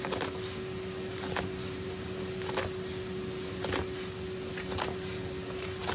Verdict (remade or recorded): recorded